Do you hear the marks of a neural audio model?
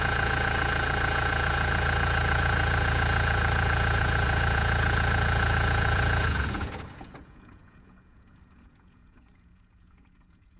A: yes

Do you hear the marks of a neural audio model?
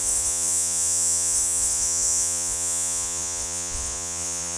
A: yes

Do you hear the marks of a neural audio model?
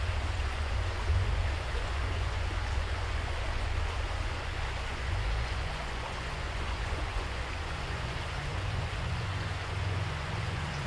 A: yes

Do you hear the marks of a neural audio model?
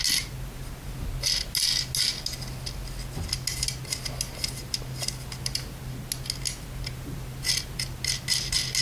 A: no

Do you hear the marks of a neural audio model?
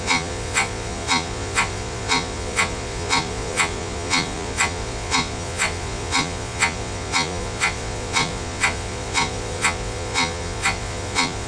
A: yes